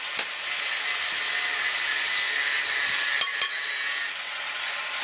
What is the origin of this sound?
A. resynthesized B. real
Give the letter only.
B